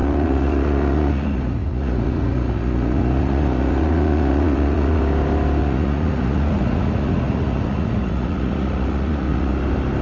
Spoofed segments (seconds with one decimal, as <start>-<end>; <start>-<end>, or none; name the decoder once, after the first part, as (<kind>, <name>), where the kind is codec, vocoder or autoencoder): 0.0-5.0 (vocoder, Vocos); 5.6-9.5